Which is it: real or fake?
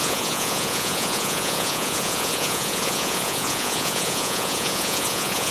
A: fake